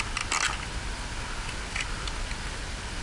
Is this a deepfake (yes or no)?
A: no